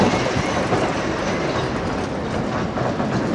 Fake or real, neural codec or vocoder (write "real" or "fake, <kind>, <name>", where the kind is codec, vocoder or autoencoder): real